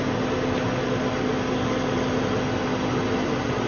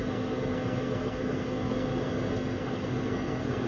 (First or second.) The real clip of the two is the first